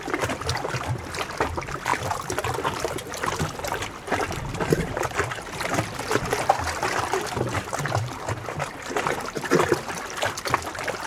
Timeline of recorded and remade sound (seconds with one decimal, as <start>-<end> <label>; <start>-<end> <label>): 0.0-11.1 recorded